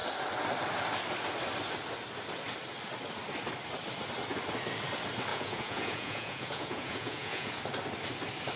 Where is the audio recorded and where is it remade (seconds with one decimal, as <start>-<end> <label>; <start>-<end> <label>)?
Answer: 0.0-5.3 recorded; 5.3-7.6 remade; 7.6-8.6 recorded